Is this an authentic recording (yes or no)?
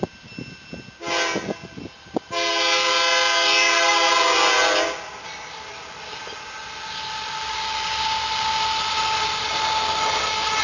yes